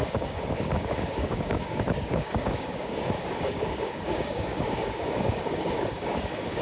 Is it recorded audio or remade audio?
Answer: remade